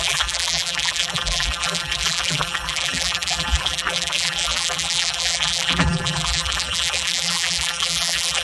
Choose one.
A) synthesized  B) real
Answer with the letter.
A